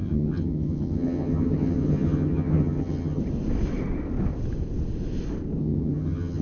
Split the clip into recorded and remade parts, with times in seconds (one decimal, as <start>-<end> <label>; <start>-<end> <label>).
0.0-3.2 remade; 3.2-5.6 recorded; 5.6-6.4 remade